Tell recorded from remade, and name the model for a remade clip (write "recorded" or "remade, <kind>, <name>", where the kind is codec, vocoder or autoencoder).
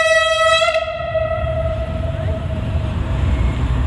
remade, vocoder, BigVGAN v2